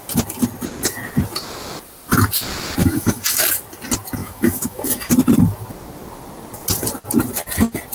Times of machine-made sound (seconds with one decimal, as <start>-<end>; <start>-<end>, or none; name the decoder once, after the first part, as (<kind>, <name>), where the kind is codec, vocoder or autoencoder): 2.8-3.4 (autoencoder, DAC-VAE); 4.2-5.1